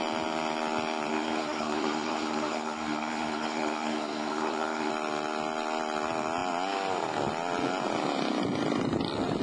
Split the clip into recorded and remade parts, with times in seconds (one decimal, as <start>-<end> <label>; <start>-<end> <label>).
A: 0.0-1.1 recorded; 1.1-4.9 remade; 4.9-9.4 recorded